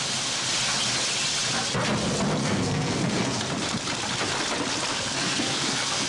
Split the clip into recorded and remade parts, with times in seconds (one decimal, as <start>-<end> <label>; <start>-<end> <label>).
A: 0.0-2.4 recorded; 2.4-3.5 remade; 3.5-4.9 recorded; 4.9-6.1 remade